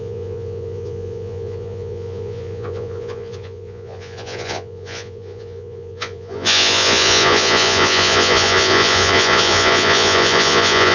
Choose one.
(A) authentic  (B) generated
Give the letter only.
B